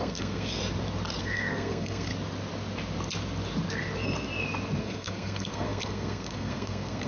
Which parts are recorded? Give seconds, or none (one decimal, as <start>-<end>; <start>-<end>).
0.6-1.2; 2.1-4.8